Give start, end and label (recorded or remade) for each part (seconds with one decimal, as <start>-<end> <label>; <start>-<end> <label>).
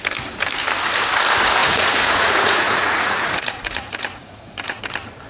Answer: 0.0-1.6 recorded; 1.6-4.8 remade; 4.8-5.3 recorded